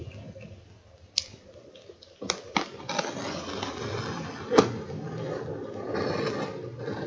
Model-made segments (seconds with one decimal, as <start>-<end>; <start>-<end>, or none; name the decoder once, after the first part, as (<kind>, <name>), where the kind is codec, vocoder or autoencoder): none